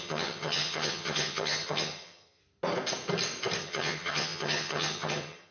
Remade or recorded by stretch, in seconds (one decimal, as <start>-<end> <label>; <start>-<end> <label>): 0.0-2.4 remade; 2.4-3.6 recorded; 3.6-5.5 remade